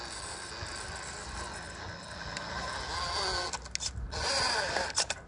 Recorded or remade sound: recorded